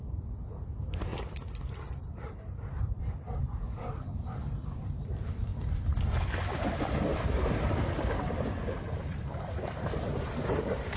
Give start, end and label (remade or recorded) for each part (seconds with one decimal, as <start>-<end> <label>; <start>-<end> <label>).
0.0-1.1 remade; 1.1-2.0 recorded; 2.0-5.5 remade; 5.5-6.4 recorded; 6.4-11.0 remade